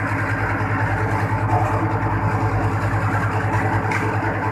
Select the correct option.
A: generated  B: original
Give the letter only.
B